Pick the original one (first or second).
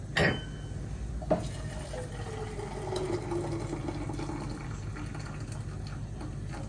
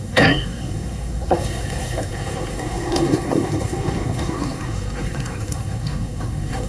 first